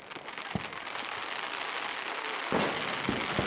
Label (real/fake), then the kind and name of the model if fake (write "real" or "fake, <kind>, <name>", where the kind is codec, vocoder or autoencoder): real